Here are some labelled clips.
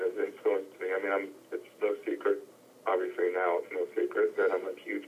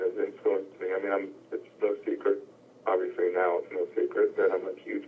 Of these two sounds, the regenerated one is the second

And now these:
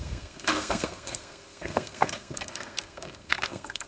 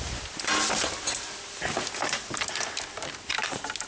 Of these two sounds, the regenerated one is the first